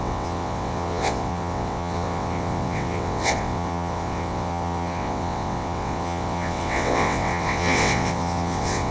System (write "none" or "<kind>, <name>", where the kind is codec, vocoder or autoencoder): vocoder, WaveNeXt